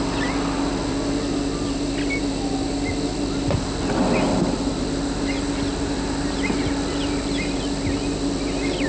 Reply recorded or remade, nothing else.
recorded